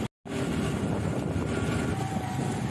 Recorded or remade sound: recorded